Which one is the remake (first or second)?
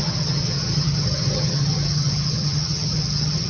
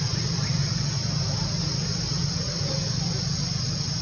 first